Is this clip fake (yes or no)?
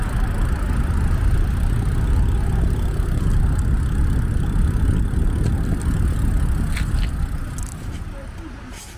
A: no